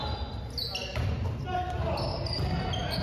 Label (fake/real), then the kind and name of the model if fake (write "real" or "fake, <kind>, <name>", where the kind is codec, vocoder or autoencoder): real